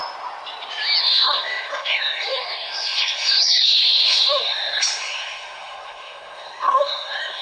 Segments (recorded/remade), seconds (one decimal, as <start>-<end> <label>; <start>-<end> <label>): 0.0-1.0 recorded; 1.0-7.4 remade

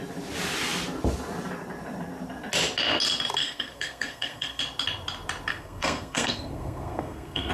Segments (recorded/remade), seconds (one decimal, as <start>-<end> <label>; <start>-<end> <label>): 0.0-3.4 recorded; 3.4-4.6 remade; 4.6-5.5 recorded; 5.5-7.5 remade

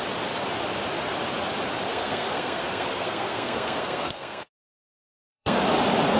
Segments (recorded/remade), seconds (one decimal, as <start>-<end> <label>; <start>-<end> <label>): 0.0-1.9 recorded; 1.9-5.6 remade; 5.6-6.2 recorded

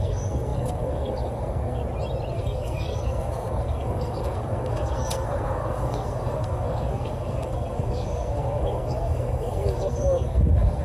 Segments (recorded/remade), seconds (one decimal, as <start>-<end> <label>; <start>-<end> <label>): 0.0-1.8 remade; 1.8-2.3 recorded; 2.3-10.8 remade

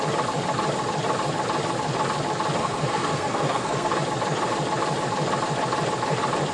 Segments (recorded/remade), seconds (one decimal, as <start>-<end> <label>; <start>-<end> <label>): 0.0-2.6 recorded; 2.6-3.9 remade; 3.9-6.5 recorded

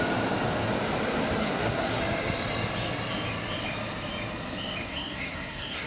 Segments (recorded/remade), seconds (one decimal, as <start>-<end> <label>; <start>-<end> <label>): 0.0-1.4 recorded; 1.4-2.0 remade; 2.0-4.9 recorded; 4.9-5.9 remade

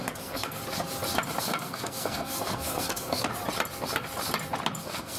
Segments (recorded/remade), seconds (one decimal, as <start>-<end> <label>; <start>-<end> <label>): 0.0-0.6 remade; 0.6-1.4 recorded; 1.4-3.3 remade; 3.3-4.8 recorded; 4.8-5.2 remade

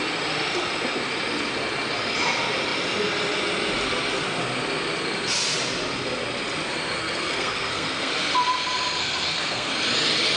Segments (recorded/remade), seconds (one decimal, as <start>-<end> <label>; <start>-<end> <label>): 0.0-7.0 recorded; 7.0-8.1 remade; 8.1-9.0 recorded; 9.0-9.7 remade; 9.7-10.4 recorded